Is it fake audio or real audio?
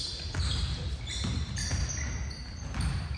real